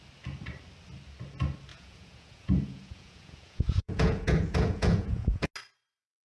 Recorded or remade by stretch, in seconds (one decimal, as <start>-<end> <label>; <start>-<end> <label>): 0.0-1.7 recorded; 1.7-5.5 remade; 5.5-6.3 recorded